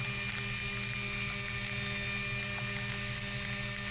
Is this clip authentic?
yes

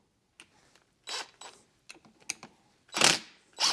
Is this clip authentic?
yes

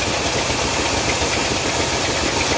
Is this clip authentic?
yes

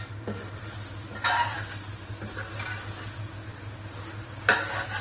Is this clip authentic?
yes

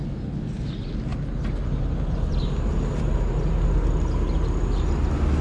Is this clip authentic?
yes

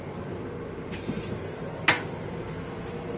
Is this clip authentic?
yes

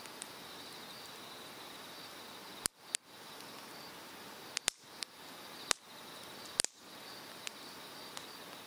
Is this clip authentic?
yes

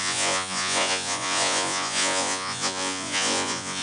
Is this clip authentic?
no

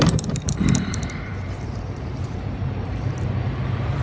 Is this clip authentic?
no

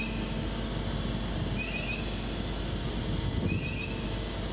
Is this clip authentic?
yes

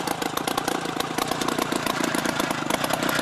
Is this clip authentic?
yes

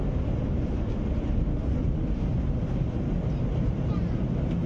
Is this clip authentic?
yes